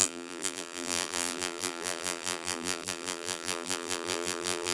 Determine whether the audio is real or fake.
fake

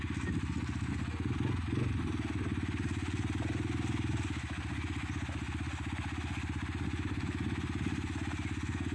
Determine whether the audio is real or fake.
real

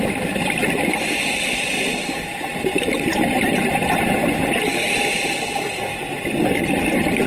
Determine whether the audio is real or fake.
real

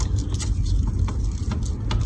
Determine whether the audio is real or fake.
real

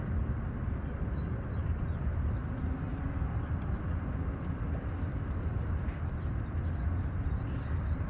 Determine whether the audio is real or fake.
real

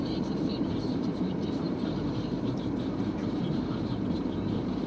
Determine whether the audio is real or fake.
fake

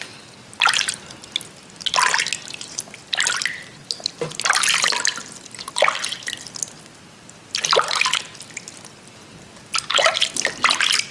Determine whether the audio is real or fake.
real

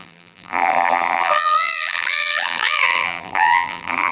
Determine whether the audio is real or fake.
fake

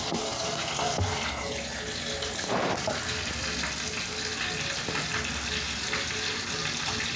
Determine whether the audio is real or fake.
real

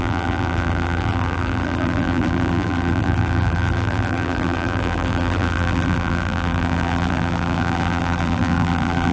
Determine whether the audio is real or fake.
fake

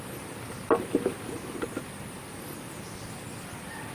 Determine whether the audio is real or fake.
real